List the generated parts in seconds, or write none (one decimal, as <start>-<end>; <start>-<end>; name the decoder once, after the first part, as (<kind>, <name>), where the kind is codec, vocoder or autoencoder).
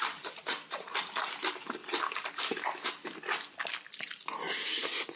0.0-1.8 (vocoder, BigVGAN v2); 4.2-5.2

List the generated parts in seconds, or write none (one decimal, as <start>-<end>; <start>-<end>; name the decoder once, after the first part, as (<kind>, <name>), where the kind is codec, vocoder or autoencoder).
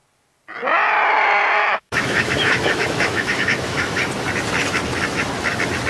1.6-4.0 (autoencoder, DAC-VAE)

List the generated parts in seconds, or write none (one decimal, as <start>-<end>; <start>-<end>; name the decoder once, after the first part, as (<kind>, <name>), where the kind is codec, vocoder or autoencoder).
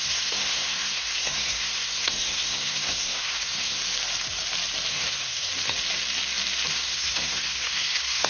0.0-3.8 (codec, SNAC); 4.9-5.5; 6.7-8.3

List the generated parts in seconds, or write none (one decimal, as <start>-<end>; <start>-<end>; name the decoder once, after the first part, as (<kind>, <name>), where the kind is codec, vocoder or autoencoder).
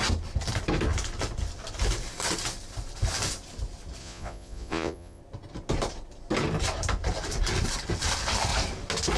4.0-5.2 (vocoder, Vocos)